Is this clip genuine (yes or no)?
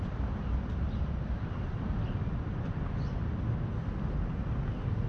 yes